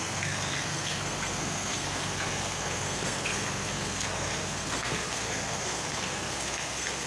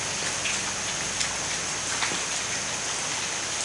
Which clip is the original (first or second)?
second